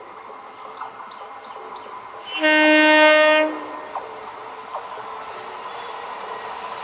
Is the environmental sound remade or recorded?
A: recorded